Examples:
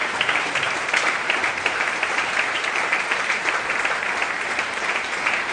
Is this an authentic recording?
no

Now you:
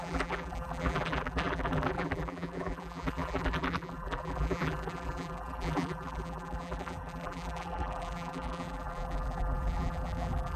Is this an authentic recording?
no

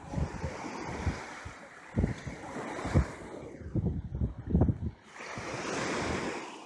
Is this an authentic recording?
yes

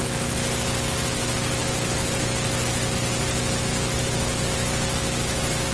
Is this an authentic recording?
no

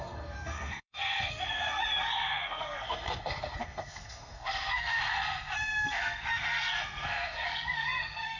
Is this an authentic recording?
no